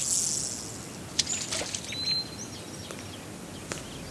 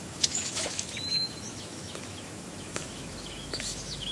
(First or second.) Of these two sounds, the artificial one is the second